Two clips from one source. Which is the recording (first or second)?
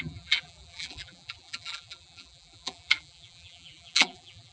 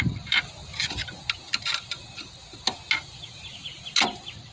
second